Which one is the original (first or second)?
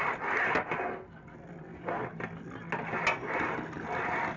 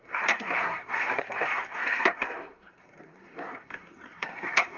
first